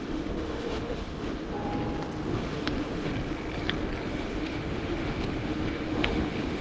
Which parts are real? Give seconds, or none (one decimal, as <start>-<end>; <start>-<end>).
1.7-2.3; 3.1-4.1